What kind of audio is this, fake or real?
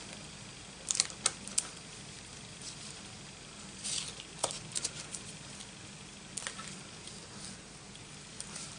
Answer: real